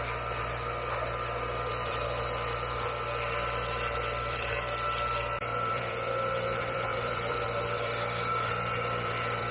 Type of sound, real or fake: fake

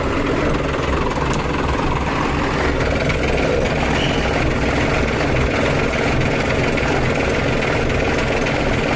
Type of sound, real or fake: real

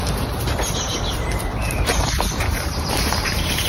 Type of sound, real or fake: fake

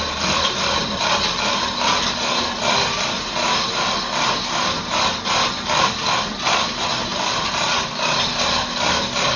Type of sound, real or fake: real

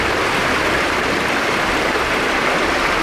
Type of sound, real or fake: fake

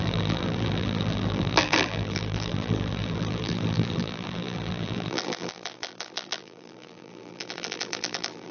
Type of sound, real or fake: fake